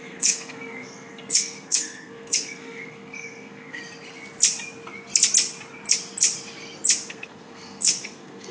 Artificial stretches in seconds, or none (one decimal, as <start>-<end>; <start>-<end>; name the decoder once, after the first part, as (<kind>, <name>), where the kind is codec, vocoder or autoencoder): 0.0-3.8 (codec, SNAC); 7.1-8.5